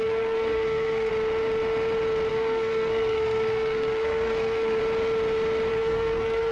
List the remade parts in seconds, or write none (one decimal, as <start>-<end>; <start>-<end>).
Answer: 0.0-1.1; 2.3-4.8; 5.7-6.5